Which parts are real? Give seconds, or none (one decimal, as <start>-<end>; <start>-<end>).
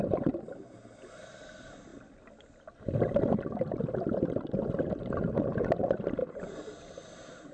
0.0-7.5